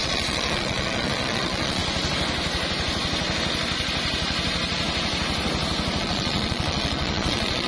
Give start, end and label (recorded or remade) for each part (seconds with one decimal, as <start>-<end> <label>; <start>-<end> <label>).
0.0-1.8 remade; 1.8-6.0 recorded; 6.0-7.7 remade